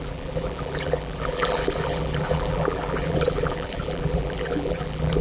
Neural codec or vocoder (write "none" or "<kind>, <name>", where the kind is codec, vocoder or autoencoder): vocoder, BigVGAN v2